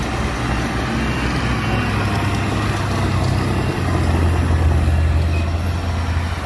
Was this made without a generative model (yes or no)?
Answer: yes